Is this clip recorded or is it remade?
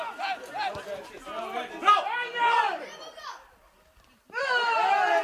recorded